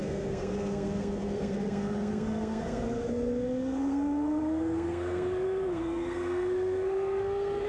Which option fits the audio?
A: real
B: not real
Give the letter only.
B